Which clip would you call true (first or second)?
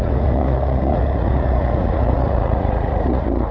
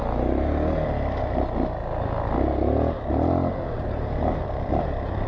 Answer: second